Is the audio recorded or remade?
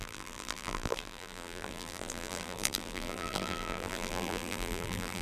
remade